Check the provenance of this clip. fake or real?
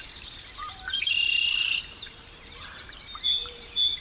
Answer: fake